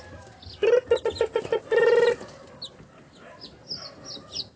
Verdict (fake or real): real